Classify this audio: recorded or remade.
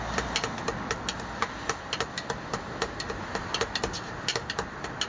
recorded